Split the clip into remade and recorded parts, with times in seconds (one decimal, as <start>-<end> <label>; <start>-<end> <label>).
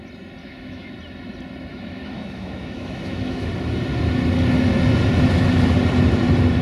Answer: 0.0-0.4 recorded; 0.4-0.9 remade; 0.9-1.7 recorded; 1.7-3.5 remade; 3.5-6.6 recorded